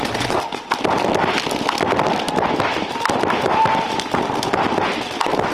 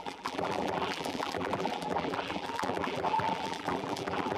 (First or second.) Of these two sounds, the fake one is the second